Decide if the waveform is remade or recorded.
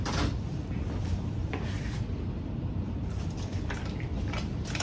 remade